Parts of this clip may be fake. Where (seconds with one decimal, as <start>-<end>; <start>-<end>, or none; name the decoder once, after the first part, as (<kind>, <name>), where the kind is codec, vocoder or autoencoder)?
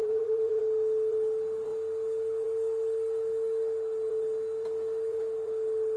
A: 0.0-0.6 (vocoder, Vocos)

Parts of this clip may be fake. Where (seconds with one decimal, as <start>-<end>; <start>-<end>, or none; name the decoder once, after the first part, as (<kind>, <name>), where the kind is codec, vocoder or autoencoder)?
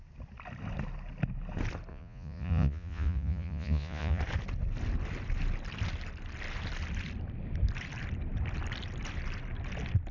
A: 1.9-4.2 (vocoder, Vocos)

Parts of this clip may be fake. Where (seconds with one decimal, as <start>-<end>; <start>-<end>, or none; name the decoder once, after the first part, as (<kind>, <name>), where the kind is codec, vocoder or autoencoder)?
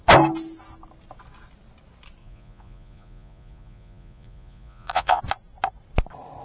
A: 2.2-5.2 (vocoder, Vocos)